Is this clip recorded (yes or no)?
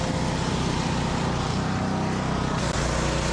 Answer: yes